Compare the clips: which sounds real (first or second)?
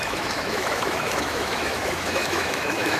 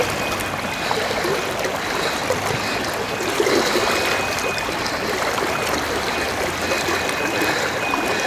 second